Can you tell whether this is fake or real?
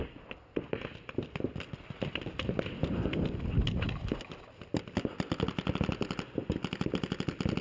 real